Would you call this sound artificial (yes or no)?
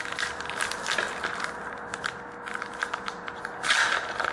no